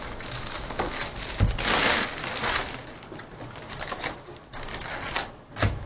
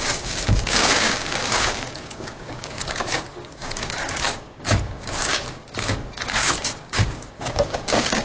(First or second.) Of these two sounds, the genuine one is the first